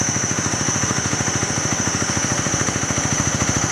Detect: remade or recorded remade